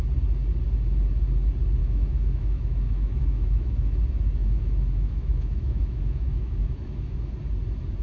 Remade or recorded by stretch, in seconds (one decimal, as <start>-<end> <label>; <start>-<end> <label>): 0.0-1.8 recorded; 1.8-4.0 remade; 4.0-4.4 recorded; 4.4-7.3 remade; 7.3-8.0 recorded